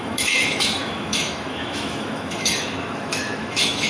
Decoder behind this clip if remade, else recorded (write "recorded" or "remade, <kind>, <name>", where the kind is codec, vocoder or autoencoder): remade, autoencoder, DAC-VAE